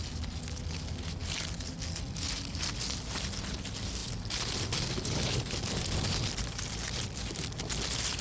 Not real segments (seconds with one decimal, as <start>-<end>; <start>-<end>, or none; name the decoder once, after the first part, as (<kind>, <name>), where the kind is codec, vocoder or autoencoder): none